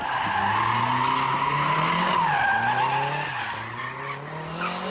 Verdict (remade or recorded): recorded